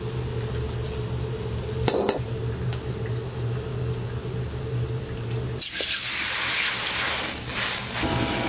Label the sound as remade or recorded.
recorded